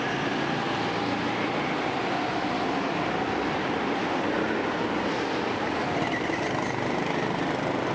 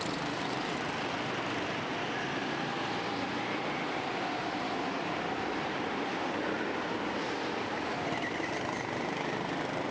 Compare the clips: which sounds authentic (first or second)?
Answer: first